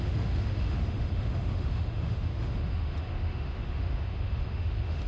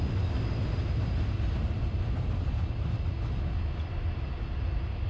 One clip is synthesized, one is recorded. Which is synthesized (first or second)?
first